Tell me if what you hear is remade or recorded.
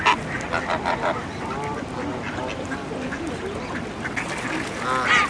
recorded